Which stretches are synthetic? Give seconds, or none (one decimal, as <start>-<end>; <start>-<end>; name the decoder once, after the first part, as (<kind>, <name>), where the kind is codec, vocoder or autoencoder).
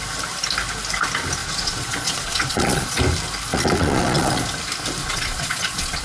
1.4-3.0 (vocoder, Vocos); 3.5-4.4; 5.0-6.0